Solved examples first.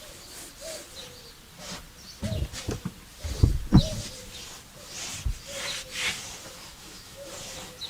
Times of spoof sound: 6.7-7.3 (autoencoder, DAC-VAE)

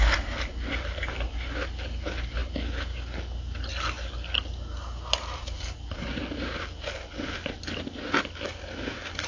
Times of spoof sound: none